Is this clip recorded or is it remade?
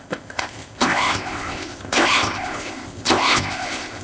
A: remade